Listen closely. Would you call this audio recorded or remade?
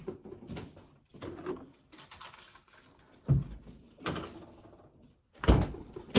recorded